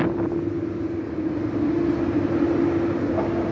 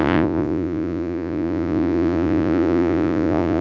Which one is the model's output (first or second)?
second